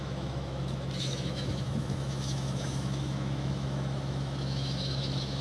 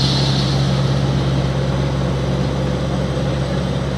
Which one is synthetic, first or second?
first